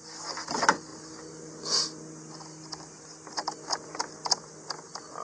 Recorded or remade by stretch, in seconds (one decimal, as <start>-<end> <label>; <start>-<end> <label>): 0.0-5.2 recorded